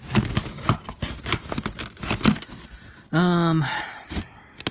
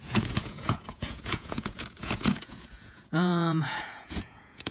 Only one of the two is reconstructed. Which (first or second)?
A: second